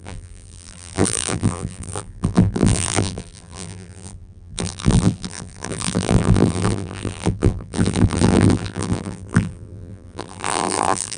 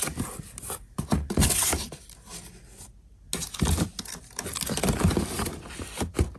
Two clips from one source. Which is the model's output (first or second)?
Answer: first